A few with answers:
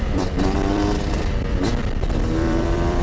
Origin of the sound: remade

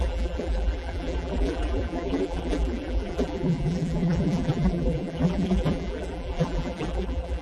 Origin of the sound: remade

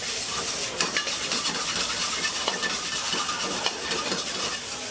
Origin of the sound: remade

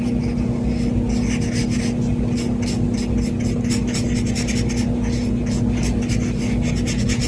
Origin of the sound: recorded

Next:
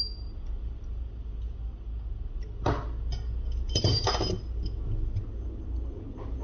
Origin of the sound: recorded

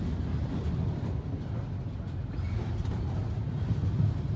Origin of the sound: recorded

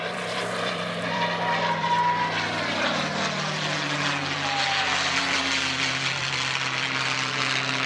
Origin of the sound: remade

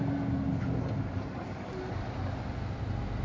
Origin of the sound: recorded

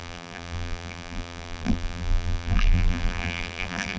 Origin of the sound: remade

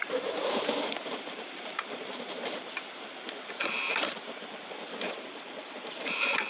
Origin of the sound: remade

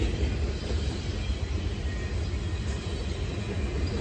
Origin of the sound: recorded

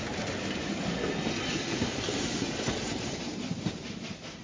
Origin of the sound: recorded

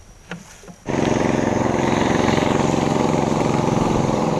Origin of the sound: remade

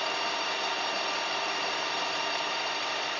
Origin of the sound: remade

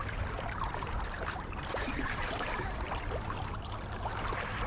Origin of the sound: remade